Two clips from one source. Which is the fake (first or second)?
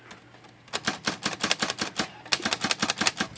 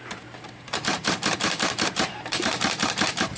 second